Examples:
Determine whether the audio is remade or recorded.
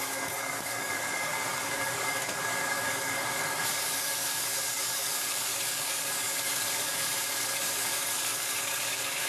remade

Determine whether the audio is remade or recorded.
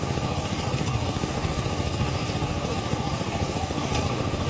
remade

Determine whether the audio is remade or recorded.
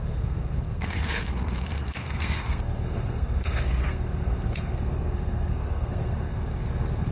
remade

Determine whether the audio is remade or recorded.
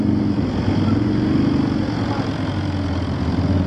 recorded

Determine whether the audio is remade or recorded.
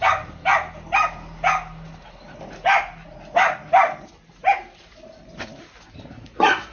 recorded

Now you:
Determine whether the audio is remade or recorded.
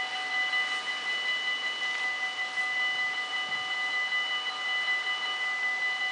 recorded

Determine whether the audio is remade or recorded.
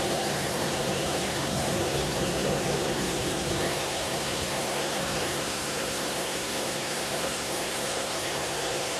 remade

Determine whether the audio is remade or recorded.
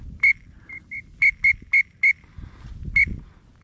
recorded